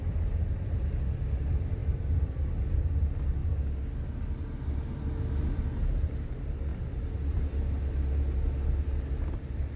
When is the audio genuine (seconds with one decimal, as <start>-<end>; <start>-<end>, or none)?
0.0-1.8; 2.6-6.7; 7.4-9.8